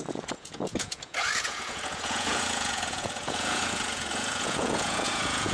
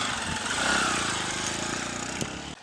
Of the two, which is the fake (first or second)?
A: first